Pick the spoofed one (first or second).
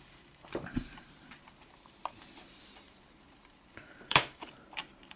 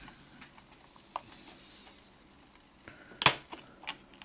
first